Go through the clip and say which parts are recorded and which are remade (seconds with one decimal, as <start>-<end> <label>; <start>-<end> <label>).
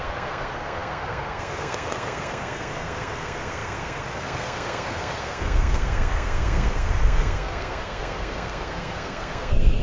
0.0-9.8 remade